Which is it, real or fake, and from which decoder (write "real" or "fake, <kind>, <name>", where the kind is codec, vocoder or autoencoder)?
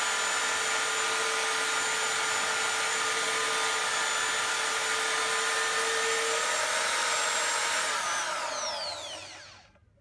real